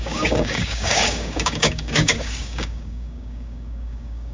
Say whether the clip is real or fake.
fake